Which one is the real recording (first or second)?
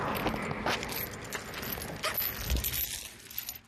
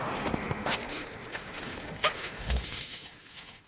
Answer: first